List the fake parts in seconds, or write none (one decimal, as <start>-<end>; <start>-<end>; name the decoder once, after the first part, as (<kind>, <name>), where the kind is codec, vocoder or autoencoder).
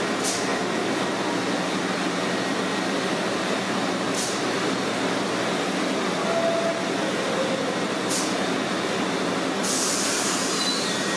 none